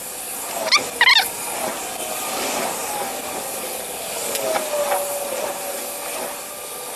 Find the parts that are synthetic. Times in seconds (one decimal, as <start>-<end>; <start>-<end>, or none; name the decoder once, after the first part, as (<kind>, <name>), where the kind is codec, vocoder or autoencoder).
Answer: none